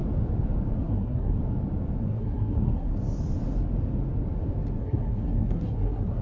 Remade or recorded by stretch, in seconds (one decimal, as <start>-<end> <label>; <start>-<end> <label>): 0.0-0.8 recorded; 0.8-1.4 remade; 1.4-2.0 recorded; 2.0-2.9 remade; 2.9-4.8 recorded; 4.8-6.2 remade